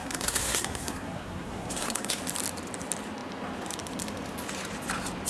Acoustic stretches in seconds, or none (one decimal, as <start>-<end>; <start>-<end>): 2.2-5.3